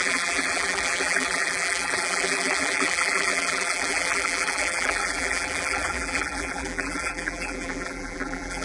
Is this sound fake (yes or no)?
yes